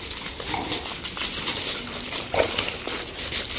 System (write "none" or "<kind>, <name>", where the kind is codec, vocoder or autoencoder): none